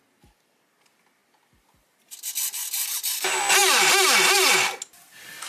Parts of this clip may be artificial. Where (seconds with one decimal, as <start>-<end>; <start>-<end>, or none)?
none